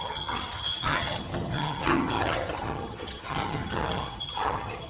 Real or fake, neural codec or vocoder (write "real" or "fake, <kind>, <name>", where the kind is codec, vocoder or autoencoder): fake, vocoder, HiFi-GAN